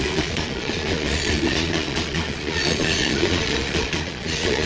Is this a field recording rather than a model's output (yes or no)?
no